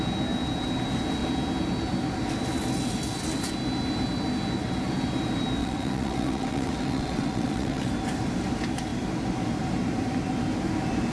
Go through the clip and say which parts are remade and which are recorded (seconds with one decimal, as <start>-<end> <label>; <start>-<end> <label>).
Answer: 0.0-5.6 recorded; 5.6-7.9 remade; 7.9-11.1 recorded